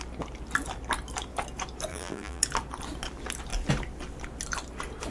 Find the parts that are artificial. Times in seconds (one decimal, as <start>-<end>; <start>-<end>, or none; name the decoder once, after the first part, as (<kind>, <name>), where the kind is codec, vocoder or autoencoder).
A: 1.9-2.4 (vocoder, BigVGAN v2)